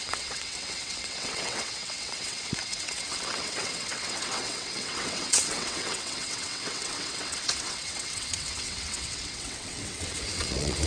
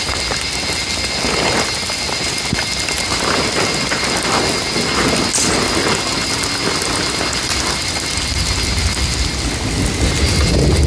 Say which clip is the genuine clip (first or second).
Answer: second